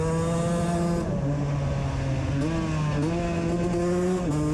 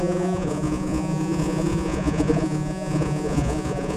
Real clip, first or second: first